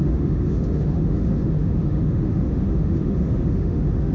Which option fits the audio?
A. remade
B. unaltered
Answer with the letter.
A